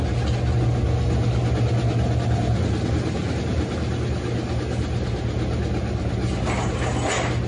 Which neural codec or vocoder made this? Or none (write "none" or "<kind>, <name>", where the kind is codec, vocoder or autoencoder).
none